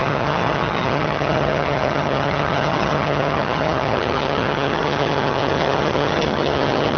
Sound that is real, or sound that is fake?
fake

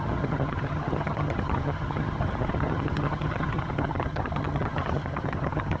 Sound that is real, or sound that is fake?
fake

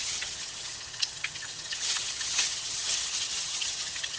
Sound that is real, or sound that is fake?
fake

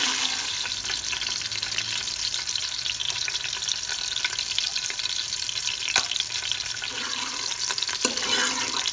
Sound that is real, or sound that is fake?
real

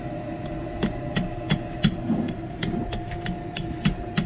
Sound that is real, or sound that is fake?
real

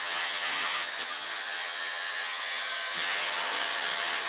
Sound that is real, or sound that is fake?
fake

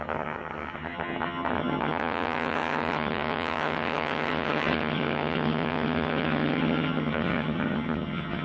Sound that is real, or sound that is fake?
fake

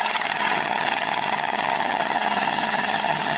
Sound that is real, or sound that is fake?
fake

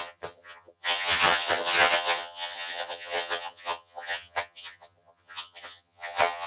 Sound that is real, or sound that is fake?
fake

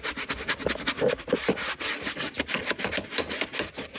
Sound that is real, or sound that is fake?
real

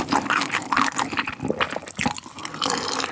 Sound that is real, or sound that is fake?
real